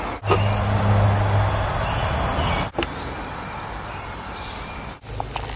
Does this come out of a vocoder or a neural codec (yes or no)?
no